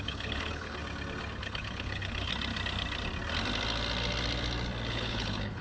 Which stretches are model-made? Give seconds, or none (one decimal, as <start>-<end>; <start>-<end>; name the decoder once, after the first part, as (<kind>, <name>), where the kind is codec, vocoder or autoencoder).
0.0-0.8 (codec, HILCodec); 1.4-2.3; 4.9-5.6